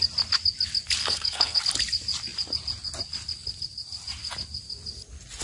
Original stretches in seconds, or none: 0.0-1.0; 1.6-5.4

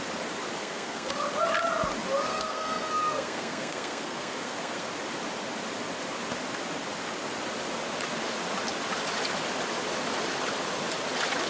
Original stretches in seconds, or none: 0.0-0.6; 1.1-2.3; 4.9-11.5

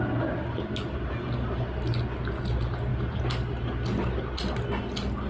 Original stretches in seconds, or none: 0.0-5.3

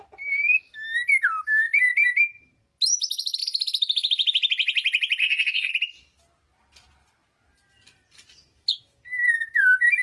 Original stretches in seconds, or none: 0.0-5.2; 5.7-10.0